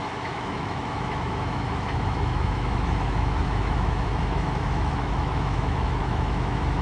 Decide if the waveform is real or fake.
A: fake